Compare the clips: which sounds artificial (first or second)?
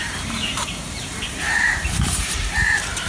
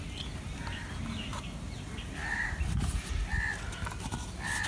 first